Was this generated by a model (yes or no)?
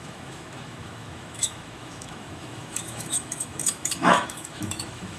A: yes